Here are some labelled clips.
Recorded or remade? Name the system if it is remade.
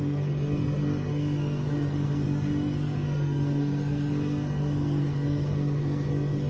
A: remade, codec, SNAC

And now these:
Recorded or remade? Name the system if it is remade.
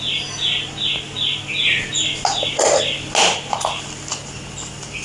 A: recorded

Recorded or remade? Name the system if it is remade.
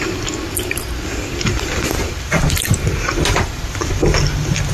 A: recorded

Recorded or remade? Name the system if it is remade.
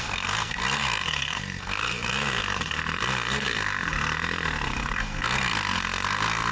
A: remade, codec, SNAC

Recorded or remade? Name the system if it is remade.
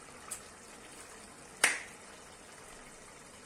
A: recorded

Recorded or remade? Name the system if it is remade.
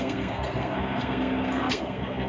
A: remade, codec, SNAC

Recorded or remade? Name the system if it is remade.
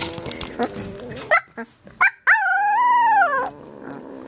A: recorded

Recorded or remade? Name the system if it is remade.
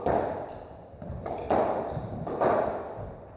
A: recorded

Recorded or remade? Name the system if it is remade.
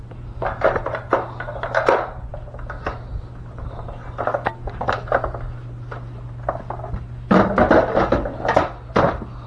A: recorded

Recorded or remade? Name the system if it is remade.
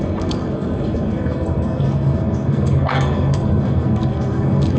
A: remade, codec, SNAC